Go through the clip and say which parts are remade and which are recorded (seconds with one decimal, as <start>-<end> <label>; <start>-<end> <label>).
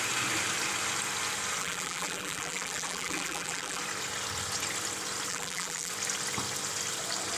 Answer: 0.0-1.6 recorded; 1.6-3.8 remade; 3.8-5.3 recorded; 5.3-5.9 remade; 5.9-7.4 recorded